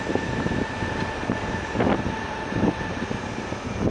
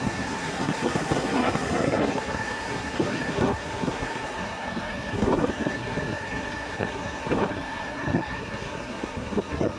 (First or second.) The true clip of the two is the first